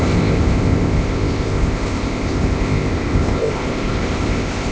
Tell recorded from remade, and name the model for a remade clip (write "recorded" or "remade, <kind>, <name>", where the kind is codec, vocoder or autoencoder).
remade, codec, ZipCodec